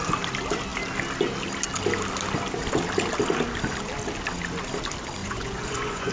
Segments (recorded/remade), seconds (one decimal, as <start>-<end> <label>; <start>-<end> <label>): 0.0-5.2 recorded; 5.2-6.1 remade